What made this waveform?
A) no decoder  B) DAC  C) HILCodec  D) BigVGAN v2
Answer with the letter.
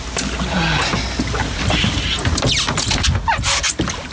A